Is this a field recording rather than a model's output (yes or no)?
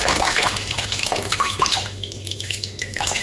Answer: no